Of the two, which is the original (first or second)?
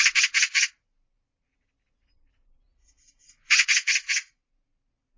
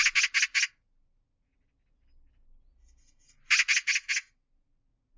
second